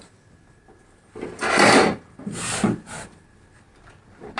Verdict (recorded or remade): recorded